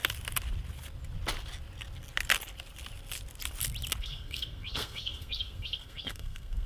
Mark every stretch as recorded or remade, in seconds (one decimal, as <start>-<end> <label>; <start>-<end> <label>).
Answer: 0.0-4.0 recorded; 4.0-6.7 remade